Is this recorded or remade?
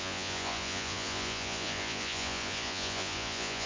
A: remade